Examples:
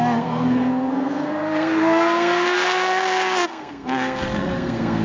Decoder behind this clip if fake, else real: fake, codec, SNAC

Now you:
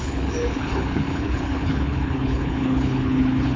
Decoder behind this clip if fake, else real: fake, codec, HILCodec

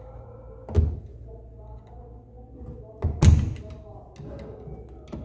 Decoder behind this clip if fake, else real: real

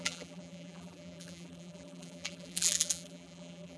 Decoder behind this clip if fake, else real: fake, vocoder, BigVGAN v2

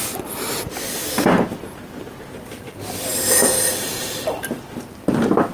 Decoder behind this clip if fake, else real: fake, vocoder, BigVGAN v2